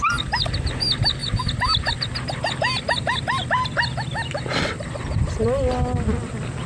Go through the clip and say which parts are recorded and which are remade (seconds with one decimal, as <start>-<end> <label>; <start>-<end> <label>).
0.0-6.7 recorded